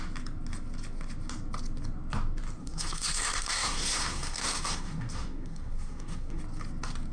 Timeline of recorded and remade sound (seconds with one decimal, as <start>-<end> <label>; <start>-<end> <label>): 0.0-2.6 recorded; 2.6-6.4 remade; 6.4-7.1 recorded